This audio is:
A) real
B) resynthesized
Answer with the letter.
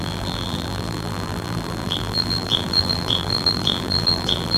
B